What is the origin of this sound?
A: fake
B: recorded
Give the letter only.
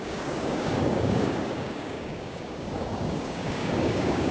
A